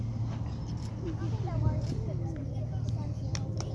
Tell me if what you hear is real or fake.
real